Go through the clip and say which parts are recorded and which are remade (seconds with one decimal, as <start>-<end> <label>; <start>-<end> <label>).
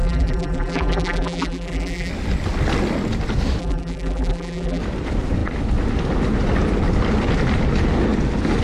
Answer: 0.0-2.1 remade; 2.1-3.6 recorded; 3.6-4.8 remade; 4.8-8.6 recorded